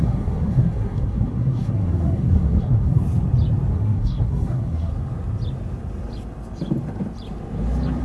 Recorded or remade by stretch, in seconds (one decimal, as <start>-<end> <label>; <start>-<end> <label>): 0.0-3.0 remade; 3.0-3.7 recorded; 3.7-4.9 remade; 4.9-8.0 recorded